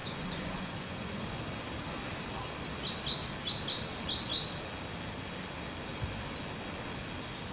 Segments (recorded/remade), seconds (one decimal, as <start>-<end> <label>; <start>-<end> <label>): 0.0-1.4 remade; 1.4-7.5 recorded